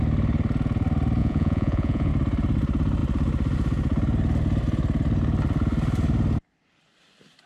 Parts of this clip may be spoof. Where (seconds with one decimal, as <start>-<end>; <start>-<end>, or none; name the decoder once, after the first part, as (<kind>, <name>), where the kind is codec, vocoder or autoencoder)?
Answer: 1.2-2.1 (vocoder, Vocos)